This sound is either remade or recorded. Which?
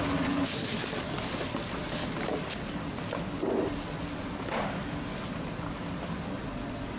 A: recorded